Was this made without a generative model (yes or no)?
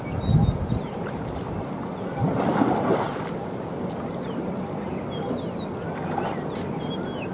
yes